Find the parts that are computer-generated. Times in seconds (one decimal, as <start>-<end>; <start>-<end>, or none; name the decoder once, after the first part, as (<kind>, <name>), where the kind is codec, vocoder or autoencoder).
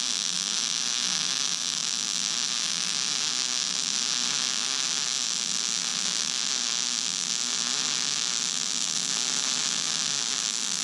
none